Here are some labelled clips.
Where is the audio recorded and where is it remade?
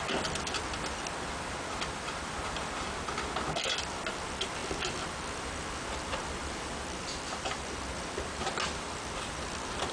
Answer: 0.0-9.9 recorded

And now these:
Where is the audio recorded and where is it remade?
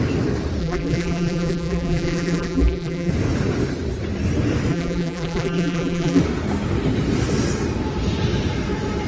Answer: 0.0-0.6 recorded; 0.6-3.1 remade; 3.1-4.7 recorded; 4.7-6.2 remade; 6.2-9.1 recorded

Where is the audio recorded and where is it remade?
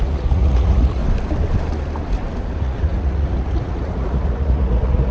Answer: 0.0-1.0 remade; 1.0-2.4 recorded; 2.4-5.1 remade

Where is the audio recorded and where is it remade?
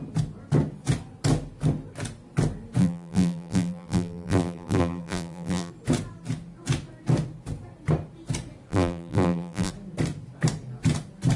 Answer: 0.0-2.8 recorded; 2.8-5.7 remade; 5.7-8.7 recorded; 8.7-9.7 remade; 9.7-11.4 recorded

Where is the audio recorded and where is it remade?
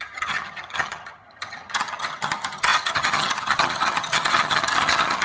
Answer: 0.0-5.2 remade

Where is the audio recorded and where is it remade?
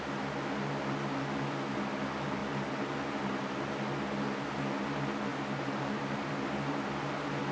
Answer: 0.0-2.4 recorded; 2.4-3.7 remade; 3.7-5.3 recorded; 5.3-6.3 remade; 6.3-7.5 recorded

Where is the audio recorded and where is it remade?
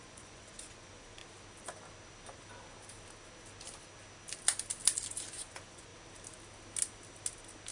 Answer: 0.0-1.2 remade; 1.2-5.3 recorded; 5.3-5.9 remade; 5.9-7.7 recorded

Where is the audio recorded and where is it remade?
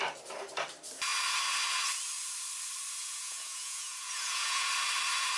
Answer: 0.0-3.0 recorded; 3.0-4.7 remade; 4.7-5.4 recorded